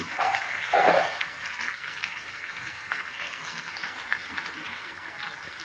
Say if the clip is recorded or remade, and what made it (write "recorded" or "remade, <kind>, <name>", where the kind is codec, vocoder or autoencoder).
remade, codec, SNAC